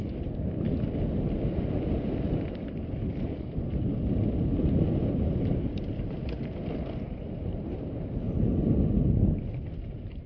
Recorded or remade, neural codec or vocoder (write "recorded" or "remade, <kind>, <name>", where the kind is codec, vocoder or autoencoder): recorded